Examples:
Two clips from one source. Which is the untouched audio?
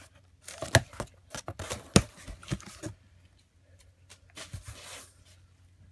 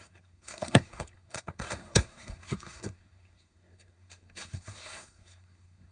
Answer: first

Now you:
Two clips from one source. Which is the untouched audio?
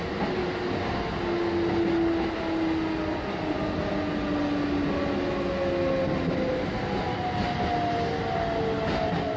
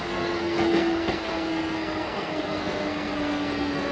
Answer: first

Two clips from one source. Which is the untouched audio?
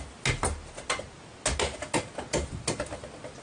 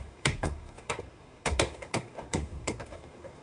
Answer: first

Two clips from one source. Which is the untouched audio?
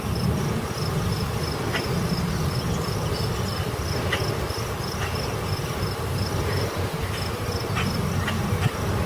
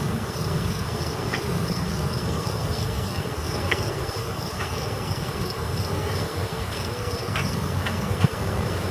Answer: first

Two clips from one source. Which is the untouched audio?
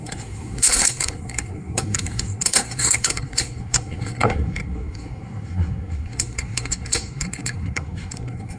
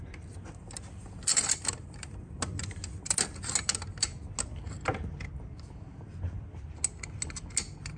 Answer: second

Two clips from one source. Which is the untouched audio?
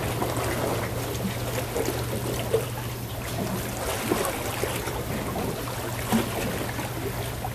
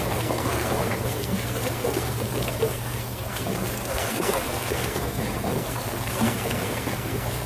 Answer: first